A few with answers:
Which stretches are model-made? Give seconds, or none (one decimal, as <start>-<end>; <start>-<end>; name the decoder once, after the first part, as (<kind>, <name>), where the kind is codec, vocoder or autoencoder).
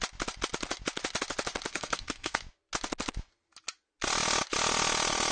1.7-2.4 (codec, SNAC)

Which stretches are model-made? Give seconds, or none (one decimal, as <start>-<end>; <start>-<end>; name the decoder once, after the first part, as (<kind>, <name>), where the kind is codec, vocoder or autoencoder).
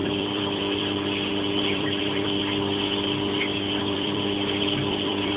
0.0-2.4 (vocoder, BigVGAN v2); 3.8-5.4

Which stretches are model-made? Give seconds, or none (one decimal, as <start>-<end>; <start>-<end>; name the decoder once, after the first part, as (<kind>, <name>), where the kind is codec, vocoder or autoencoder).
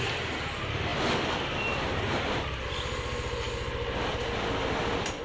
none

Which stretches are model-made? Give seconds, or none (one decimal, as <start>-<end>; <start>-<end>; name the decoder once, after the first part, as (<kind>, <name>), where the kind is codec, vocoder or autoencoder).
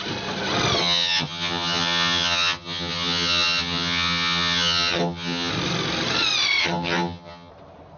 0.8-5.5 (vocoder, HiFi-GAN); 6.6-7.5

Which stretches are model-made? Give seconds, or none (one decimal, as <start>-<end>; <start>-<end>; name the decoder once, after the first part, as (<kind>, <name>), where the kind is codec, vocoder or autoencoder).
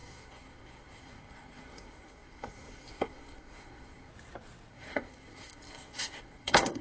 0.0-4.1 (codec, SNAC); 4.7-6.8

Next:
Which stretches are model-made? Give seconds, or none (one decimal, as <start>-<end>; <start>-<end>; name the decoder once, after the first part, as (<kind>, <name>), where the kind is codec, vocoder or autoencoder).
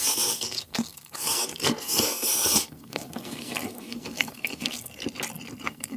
0.0-5.0 (codec, SNAC); 5.6-6.0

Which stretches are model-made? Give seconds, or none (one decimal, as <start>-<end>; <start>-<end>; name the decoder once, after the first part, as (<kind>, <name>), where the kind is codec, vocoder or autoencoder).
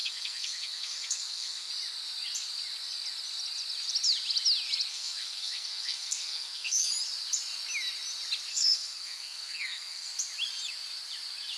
0.0-1.7 (codec, SNAC); 4.9-6.9; 8.5-10.1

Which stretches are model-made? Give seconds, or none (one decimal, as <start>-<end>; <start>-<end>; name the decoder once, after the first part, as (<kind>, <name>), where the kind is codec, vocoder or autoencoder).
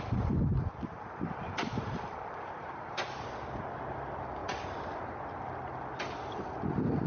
0.5-3.4 (vocoder, BigVGAN v2)